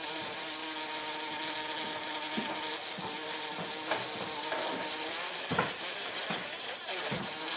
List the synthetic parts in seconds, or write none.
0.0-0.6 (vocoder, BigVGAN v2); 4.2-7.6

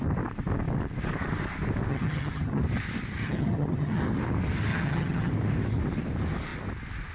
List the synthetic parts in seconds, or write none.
1.9-2.6 (vocoder, HiFi-GAN); 3.2-4.0; 4.7-5.3